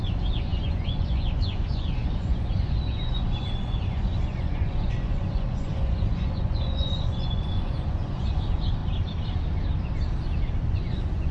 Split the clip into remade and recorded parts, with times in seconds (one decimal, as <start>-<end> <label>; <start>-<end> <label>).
0.0-8.8 remade; 8.8-10.7 recorded; 10.7-11.3 remade